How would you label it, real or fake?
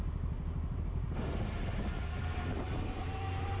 fake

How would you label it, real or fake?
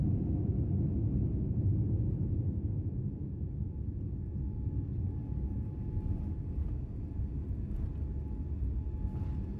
real